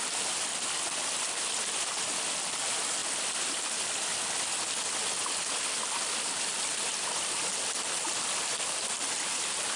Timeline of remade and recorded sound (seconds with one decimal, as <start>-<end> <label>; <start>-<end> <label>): 0.0-9.8 recorded